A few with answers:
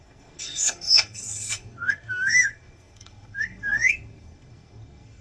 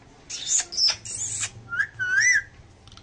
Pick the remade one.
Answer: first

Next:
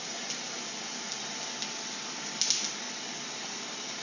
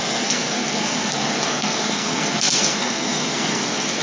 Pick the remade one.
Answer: second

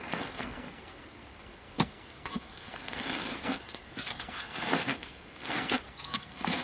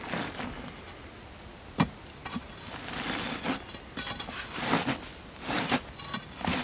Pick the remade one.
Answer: first